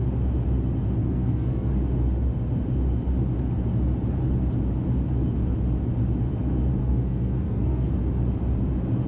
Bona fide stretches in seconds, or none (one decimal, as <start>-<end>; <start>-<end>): 0.0-1.0; 1.7-6.8; 7.9-9.1

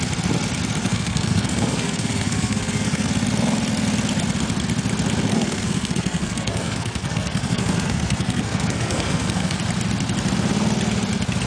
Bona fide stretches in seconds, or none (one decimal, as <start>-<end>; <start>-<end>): 0.0-0.8; 3.1-5.3; 9.6-11.5

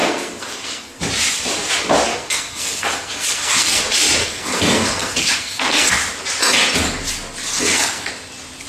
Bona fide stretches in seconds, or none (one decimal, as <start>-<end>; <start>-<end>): 1.0-2.1; 3.8-4.2; 5.9-7.5; 8.1-8.7

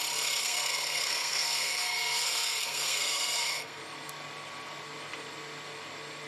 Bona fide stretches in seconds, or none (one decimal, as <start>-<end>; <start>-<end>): 0.0-0.4; 3.8-6.3

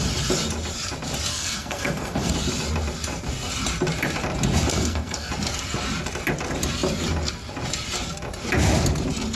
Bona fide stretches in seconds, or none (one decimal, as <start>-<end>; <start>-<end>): 0.0-1.3; 2.3-4.7; 5.3-9.4

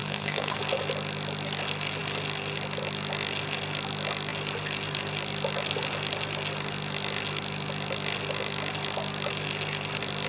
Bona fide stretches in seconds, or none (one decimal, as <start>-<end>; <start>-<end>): 0.6-10.3

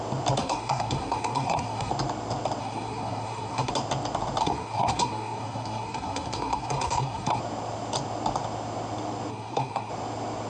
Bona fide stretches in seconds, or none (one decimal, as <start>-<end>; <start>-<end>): 0.0-0.4; 1.9-2.6; 3.7-4.4; 7.4-9.3; 9.9-10.5